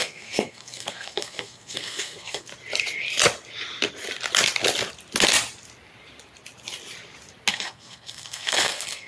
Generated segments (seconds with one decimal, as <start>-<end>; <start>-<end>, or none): 0.0-2.5; 7.5-9.1